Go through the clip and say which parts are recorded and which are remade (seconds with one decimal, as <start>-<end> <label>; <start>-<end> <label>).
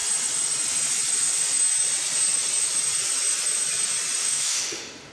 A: 0.0-4.2 recorded; 4.2-5.1 remade